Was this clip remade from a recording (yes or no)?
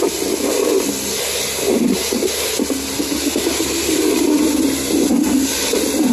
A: no